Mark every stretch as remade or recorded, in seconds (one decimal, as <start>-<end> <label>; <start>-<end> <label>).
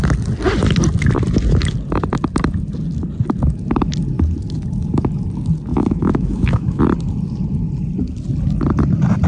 0.0-5.7 recorded; 5.7-6.8 remade; 6.8-9.3 recorded